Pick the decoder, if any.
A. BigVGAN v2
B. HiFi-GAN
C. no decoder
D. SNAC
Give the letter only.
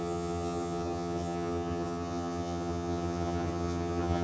B